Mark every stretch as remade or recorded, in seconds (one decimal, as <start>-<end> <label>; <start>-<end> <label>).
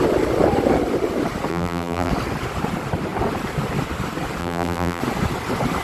0.0-1.5 recorded; 1.5-2.1 remade; 2.1-4.4 recorded; 4.4-5.0 remade; 5.0-5.8 recorded